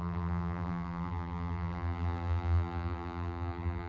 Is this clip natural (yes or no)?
no